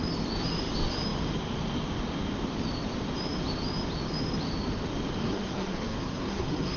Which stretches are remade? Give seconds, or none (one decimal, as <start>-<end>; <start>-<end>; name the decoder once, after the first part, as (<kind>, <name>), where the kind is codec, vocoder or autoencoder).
5.2-6.8 (codec, SNAC)